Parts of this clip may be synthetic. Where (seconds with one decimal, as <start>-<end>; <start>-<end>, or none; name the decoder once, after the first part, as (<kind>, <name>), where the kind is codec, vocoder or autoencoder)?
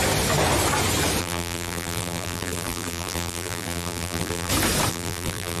1.2-4.5 (vocoder, BigVGAN v2); 4.9-5.6